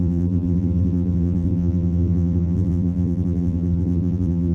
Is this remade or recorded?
remade